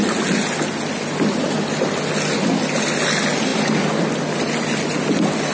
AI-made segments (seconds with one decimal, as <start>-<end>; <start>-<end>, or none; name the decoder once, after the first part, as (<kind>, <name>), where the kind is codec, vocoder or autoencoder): none